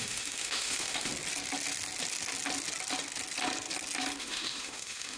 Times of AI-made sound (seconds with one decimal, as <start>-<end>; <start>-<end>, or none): 0.0-1.1; 4.2-5.2